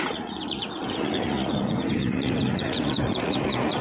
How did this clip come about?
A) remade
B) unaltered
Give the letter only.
A